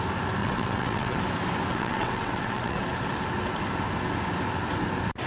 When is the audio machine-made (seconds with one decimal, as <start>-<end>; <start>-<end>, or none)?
0.4-1.2; 1.7-2.8